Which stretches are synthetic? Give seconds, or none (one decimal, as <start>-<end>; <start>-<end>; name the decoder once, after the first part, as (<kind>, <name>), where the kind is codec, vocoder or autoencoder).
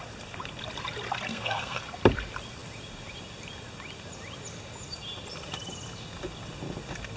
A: 1.3-1.8 (codec, SNAC)